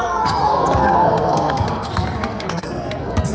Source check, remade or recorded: remade